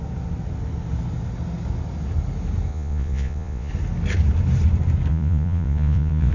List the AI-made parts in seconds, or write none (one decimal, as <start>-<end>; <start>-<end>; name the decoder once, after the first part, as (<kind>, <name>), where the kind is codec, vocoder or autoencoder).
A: 2.7-3.7 (vocoder, Vocos); 5.1-6.3